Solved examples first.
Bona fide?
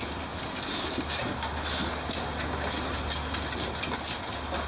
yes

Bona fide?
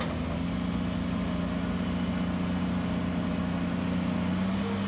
yes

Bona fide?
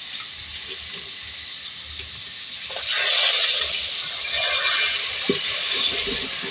yes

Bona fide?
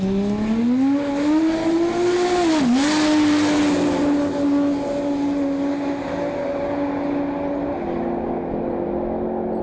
yes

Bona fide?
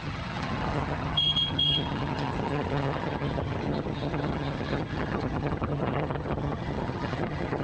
no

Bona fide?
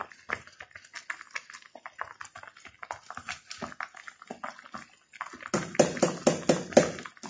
yes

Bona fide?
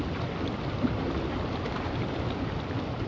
yes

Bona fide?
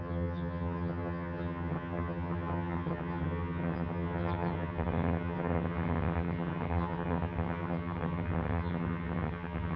no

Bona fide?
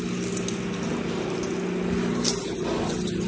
yes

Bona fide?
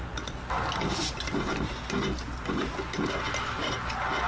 yes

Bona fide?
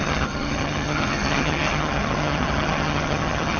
no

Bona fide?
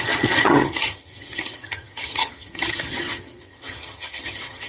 no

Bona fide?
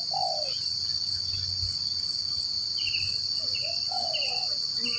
yes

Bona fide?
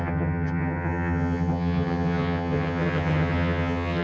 no